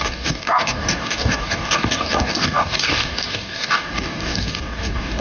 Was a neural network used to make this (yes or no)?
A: yes